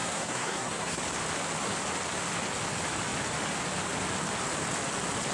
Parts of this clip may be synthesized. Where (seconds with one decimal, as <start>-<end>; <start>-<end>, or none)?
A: 0.0-1.0